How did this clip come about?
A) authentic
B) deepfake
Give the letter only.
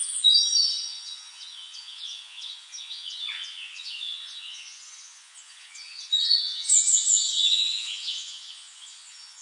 B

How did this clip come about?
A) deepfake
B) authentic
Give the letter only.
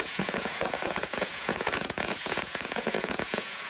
A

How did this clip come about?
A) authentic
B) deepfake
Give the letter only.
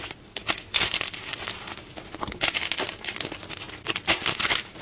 A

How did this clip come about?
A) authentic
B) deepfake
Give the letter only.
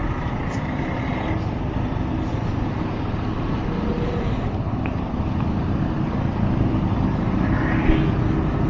A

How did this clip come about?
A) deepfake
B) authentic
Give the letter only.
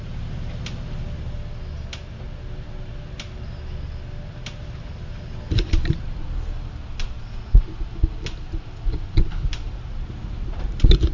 B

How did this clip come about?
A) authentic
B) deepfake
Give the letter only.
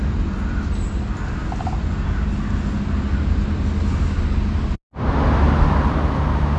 A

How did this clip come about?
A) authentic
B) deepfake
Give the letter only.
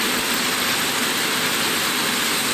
A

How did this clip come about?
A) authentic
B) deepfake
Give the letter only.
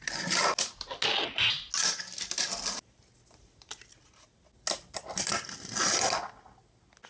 A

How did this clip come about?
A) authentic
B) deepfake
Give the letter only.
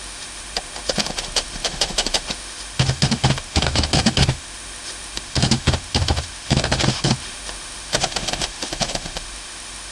B